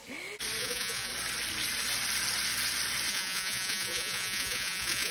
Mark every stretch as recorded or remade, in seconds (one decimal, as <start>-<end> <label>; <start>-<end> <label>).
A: 0.0-0.6 recorded; 0.6-1.1 remade; 1.1-3.1 recorded; 3.1-5.1 remade